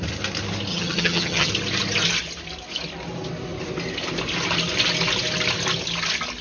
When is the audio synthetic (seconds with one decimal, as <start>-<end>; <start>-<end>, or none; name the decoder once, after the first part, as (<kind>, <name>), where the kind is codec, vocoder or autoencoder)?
0.7-1.5 (vocoder, HiFi-GAN)